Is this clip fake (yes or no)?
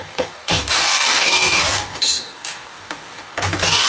yes